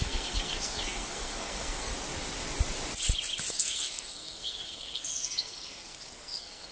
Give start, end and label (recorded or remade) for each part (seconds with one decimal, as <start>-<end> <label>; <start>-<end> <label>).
0.0-1.9 remade; 1.9-3.5 recorded; 3.5-6.7 remade